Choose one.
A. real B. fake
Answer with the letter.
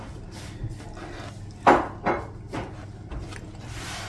A